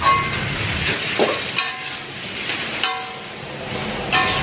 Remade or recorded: recorded